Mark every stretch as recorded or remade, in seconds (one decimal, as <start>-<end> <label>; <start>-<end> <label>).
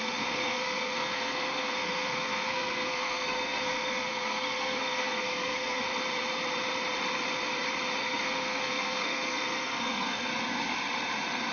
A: 0.0-5.8 remade; 5.8-8.0 recorded; 8.0-10.3 remade; 10.3-11.5 recorded